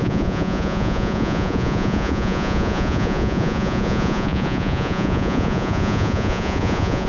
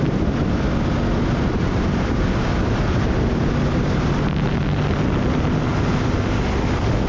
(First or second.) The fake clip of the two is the first